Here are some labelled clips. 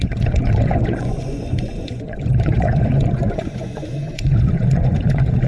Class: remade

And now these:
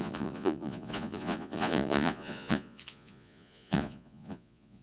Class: remade